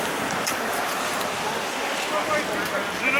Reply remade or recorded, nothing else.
remade